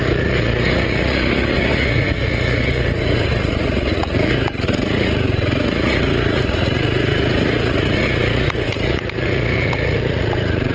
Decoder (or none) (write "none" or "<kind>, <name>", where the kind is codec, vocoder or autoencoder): vocoder, Vocos